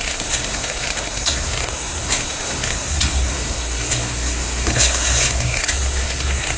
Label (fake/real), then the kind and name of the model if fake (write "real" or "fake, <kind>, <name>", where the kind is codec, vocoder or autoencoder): fake, codec, SNAC